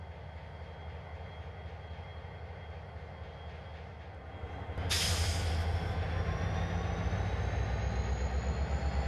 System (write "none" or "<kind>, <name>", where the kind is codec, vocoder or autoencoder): none